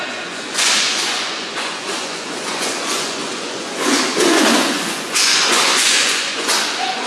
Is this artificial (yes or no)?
yes